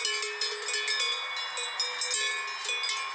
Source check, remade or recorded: recorded